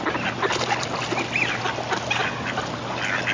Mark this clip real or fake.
real